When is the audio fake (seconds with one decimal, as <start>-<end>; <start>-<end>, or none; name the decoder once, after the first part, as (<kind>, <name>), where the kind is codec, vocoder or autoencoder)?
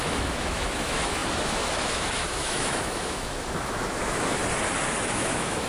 0.0-4.4 (autoencoder, DAC-VAE); 5.1-5.7